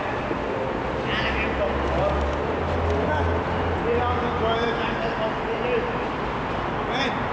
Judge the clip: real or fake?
real